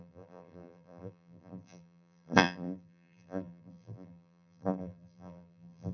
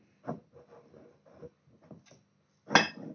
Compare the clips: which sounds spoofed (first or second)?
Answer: first